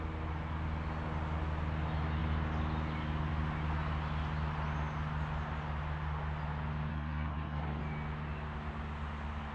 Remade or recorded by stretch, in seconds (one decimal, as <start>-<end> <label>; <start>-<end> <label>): 0.0-6.9 recorded; 6.9-7.8 remade; 7.8-9.5 recorded